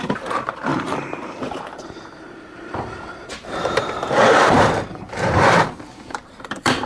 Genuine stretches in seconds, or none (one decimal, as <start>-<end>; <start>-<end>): none